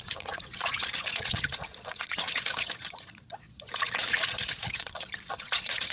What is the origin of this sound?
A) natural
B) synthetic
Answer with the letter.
B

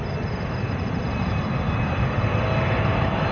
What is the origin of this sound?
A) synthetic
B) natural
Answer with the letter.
B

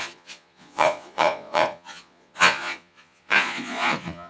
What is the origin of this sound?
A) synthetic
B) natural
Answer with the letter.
A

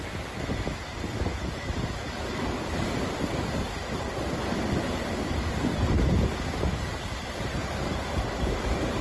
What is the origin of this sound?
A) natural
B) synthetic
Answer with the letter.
A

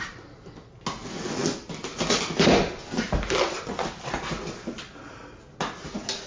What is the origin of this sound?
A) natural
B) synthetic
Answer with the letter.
A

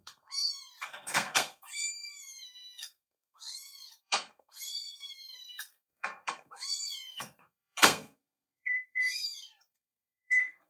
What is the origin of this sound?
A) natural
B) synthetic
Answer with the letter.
B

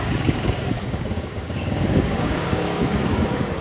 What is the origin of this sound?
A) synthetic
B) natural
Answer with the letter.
A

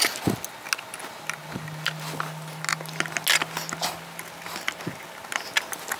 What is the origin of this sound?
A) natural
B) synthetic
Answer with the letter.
A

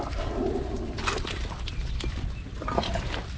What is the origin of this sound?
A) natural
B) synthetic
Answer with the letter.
B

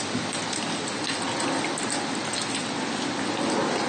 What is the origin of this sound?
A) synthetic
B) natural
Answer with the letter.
B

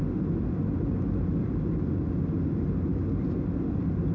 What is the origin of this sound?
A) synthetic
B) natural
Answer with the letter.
B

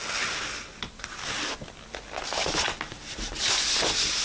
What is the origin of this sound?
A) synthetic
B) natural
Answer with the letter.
B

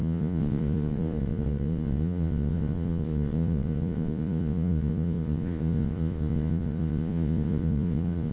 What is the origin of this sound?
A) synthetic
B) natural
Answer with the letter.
A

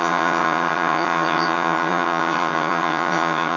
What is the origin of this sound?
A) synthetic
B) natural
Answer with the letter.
A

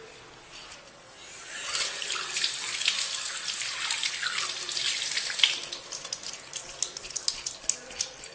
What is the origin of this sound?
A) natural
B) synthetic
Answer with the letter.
A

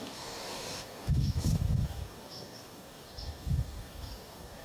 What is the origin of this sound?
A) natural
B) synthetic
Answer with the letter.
B